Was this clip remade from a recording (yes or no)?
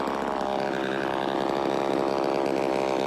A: no